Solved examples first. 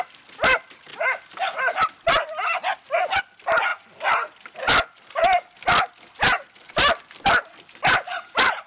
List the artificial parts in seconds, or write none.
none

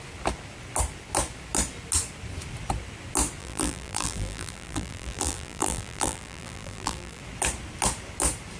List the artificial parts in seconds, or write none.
3.4-7.2 (vocoder, BigVGAN v2)

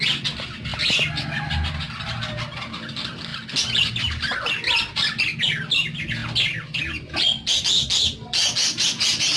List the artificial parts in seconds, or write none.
none

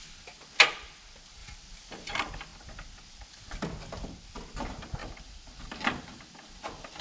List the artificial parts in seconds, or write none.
5.0-7.0 (vocoder, BigVGAN v2)

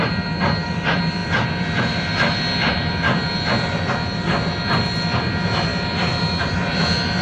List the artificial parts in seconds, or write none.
none

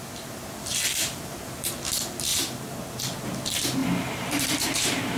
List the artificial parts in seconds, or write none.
0.7-1.7 (vocoder, BigVGAN v2); 2.3-3.0; 3.8-5.2

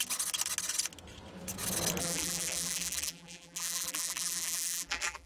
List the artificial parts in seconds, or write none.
2.0-5.3 (vocoder, BigVGAN v2)

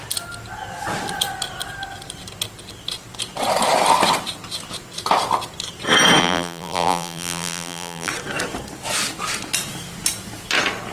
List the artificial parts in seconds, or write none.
6.2-8.1 (vocoder, BigVGAN v2)